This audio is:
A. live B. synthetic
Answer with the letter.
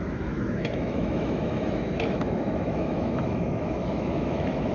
B